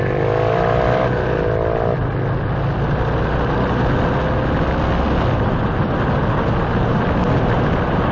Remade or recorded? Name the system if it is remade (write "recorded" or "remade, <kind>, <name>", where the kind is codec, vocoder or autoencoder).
recorded